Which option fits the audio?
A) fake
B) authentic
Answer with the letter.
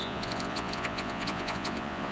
A